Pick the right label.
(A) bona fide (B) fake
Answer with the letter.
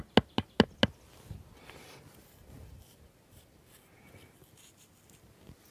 A